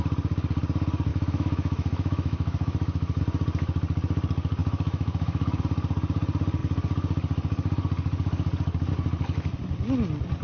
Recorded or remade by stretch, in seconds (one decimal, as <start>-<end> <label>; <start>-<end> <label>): 0.0-1.1 recorded; 1.1-3.2 remade; 3.2-4.6 recorded; 4.6-5.6 remade; 5.6-10.4 recorded